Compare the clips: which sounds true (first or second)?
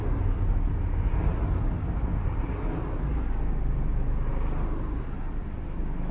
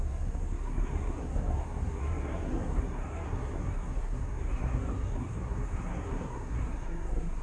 first